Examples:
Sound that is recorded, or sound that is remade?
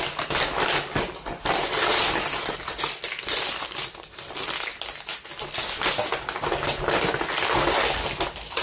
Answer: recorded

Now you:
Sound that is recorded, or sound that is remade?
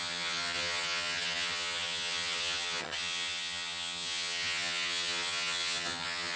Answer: remade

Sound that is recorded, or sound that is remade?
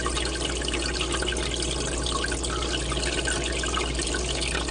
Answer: recorded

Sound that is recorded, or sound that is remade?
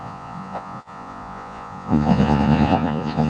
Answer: remade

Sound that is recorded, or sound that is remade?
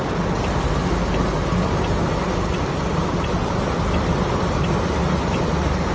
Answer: recorded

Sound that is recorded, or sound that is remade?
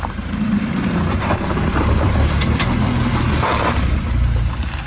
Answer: remade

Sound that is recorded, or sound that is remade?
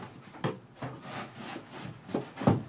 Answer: recorded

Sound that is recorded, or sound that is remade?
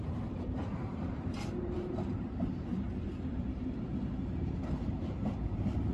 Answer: remade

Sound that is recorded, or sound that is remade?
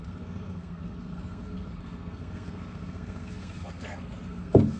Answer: remade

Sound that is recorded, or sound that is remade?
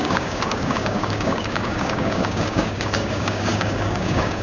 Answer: remade